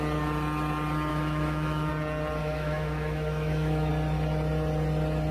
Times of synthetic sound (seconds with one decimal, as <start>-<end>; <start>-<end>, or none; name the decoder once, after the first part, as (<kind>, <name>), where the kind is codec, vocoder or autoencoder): 1.1-1.9 (autoencoder, DAC-VAE); 2.4-3.9